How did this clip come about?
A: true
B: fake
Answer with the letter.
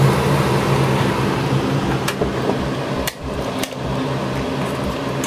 A